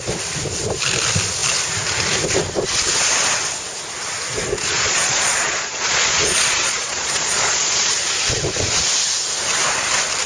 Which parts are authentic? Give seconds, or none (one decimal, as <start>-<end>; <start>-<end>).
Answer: 0.0-4.7; 7.9-10.3